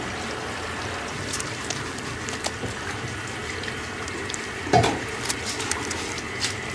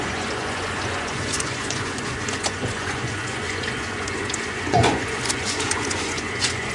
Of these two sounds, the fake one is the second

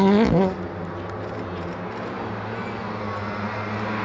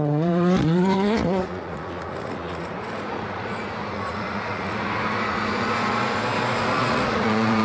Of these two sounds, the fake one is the second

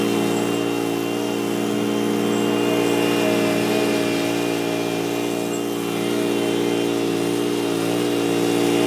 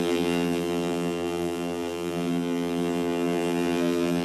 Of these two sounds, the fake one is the second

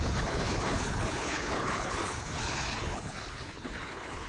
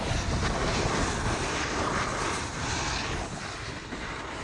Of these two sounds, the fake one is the first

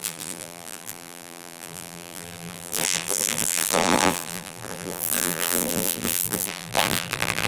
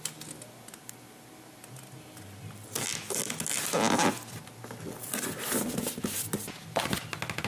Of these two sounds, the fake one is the first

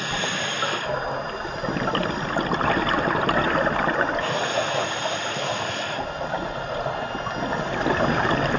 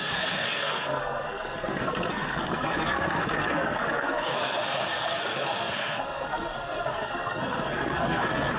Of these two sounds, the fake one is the second